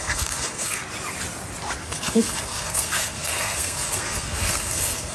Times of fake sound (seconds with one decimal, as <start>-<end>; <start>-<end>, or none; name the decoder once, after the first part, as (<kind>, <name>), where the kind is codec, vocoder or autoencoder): 0.0-0.8 (codec, SNAC); 1.8-5.1